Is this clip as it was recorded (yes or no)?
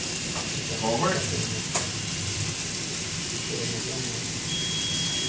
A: yes